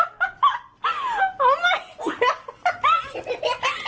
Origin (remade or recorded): recorded